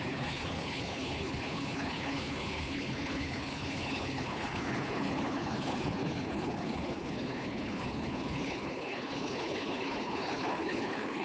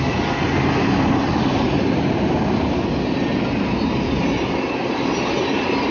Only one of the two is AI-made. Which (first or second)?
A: first